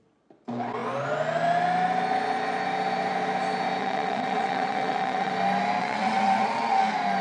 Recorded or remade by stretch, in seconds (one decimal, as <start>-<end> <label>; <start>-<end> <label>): 0.0-3.8 recorded; 3.8-5.3 remade; 5.3-5.8 recorded; 5.8-6.8 remade; 6.8-7.2 recorded